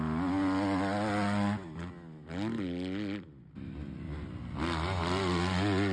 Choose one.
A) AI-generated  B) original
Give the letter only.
B